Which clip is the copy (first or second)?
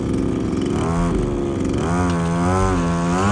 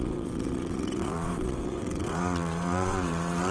second